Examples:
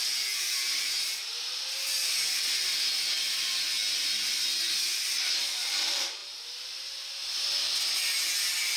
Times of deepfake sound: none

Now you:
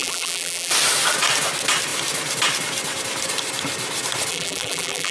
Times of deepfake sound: 0.0-0.7 (vocoder, BigVGAN v2); 4.3-5.1

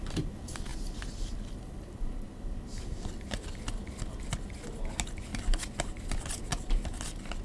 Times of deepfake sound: 0.7-4.2 (vocoder, BigVGAN v2); 5.3-6.2

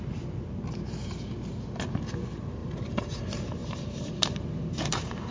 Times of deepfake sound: 2.6-3.2 (vocoder, BigVGAN v2); 3.6-5.3

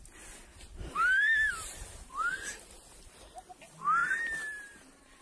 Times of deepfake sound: 0.7-2.5 (vocoder, BigVGAN v2); 4.0-5.2